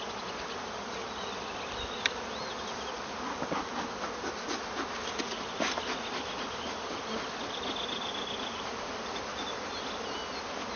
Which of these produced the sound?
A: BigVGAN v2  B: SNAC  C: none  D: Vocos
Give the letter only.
C